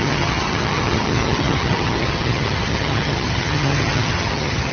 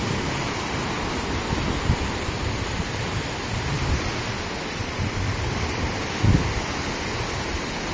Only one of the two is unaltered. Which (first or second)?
second